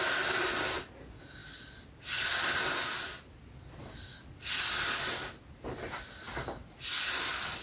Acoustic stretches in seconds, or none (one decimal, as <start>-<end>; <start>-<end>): 0.0-7.6